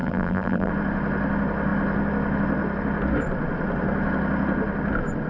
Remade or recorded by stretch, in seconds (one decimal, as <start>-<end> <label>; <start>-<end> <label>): 0.0-0.7 remade; 0.7-5.3 recorded